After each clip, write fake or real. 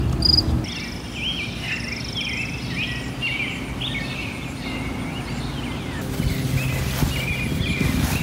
real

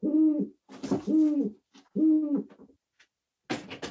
real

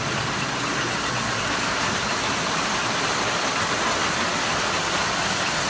real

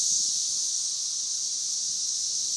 real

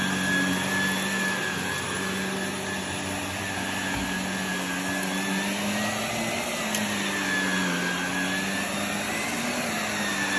real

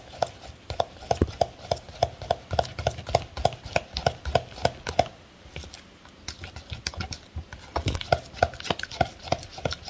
real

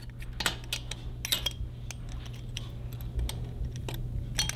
real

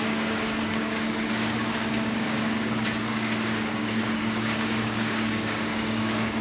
fake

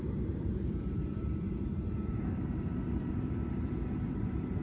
fake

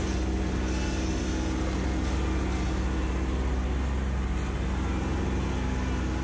real